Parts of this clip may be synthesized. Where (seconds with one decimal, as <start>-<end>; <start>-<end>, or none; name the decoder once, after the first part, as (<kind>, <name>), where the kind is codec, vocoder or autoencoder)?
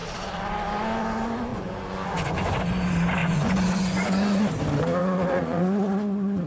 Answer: 1.5-2.6 (vocoder, Vocos); 3.2-4.5; 5.0-6.5